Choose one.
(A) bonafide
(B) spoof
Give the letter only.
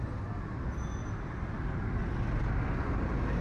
A